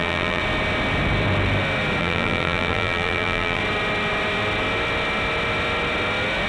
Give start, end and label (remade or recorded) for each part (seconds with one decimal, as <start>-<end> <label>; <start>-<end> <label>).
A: 0.0-0.4 remade; 0.4-2.0 recorded; 2.0-3.6 remade; 3.6-6.5 recorded